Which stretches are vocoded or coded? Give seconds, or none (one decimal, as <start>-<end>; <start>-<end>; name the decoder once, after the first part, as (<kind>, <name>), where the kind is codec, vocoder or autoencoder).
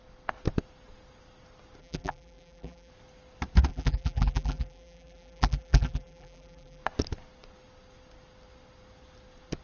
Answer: 1.8-2.9 (vocoder, BigVGAN v2); 3.7-6.8